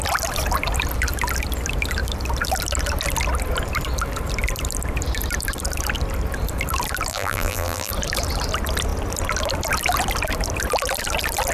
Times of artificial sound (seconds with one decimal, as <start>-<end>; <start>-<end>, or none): 7.1-7.9